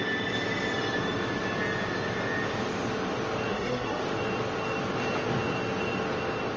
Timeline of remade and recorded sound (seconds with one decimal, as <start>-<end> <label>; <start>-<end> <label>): 0.0-3.5 recorded; 3.5-4.0 remade; 4.0-6.6 recorded